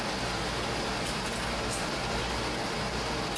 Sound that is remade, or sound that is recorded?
recorded